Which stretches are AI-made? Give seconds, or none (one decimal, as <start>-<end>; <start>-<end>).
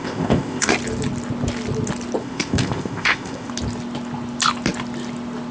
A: 0.0-0.7; 2.2-3.5